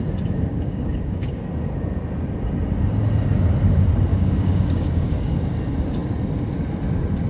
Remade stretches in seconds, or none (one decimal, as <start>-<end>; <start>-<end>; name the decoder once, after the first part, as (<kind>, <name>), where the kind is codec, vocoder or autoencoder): 0.5-1.4 (codec, DAC); 4.1-5.3